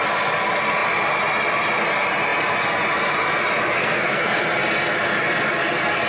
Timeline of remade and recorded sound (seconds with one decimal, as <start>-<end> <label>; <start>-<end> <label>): 0.0-3.8 recorded; 3.8-4.4 remade; 4.4-6.1 recorded

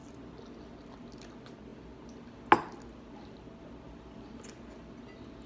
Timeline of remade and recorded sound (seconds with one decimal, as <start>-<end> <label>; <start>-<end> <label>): 0.0-5.5 recorded

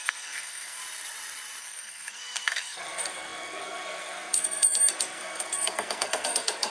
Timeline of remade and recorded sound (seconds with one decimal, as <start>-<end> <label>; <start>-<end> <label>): 0.0-0.8 remade; 0.8-1.6 recorded; 1.6-6.7 remade

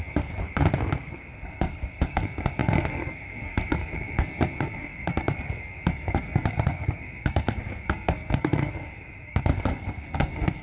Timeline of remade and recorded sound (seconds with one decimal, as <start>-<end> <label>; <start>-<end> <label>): 0.0-0.4 remade; 0.4-1.1 recorded; 1.1-10.6 remade

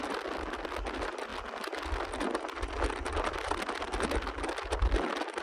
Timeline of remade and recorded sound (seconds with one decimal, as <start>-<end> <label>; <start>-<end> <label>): 0.0-5.4 recorded